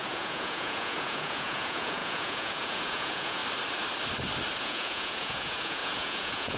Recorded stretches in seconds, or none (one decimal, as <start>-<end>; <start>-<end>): 3.4-4.6